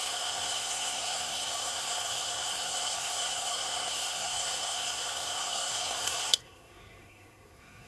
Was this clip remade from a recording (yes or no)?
yes